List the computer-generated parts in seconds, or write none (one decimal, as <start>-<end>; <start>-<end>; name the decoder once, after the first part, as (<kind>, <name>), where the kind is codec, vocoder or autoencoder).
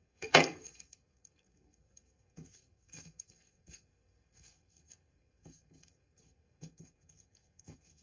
0.0-8.0 (codec, SNAC)